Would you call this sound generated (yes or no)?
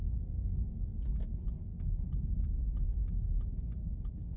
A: no